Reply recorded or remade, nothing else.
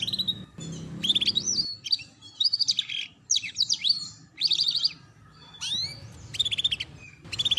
recorded